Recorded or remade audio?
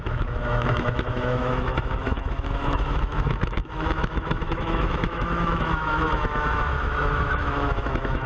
remade